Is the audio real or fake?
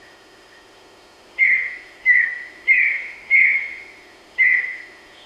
fake